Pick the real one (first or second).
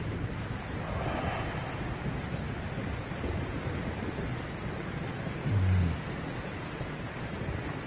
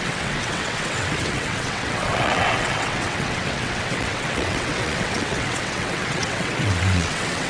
first